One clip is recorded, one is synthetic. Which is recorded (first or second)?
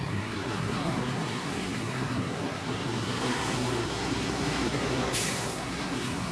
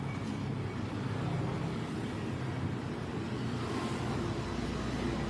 second